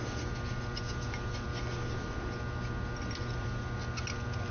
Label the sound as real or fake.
real